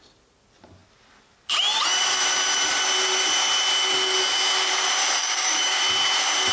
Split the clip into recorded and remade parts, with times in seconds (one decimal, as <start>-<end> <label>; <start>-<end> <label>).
0.0-5.2 recorded; 5.2-5.8 remade; 5.8-6.5 recorded